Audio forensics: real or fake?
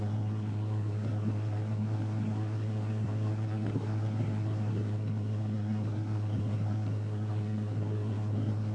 fake